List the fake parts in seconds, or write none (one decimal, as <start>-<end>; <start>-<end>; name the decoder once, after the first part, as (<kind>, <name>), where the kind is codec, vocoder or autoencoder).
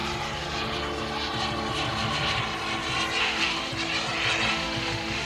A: 3.2-3.7 (autoencoder, DAC-VAE); 4.5-5.3